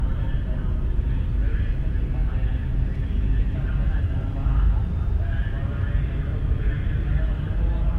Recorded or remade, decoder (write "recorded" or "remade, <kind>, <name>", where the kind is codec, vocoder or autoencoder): recorded